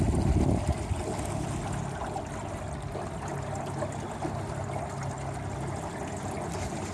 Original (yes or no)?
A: yes